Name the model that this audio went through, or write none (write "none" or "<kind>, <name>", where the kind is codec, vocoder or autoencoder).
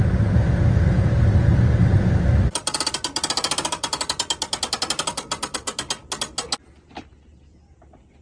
none